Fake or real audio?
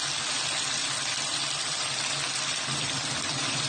fake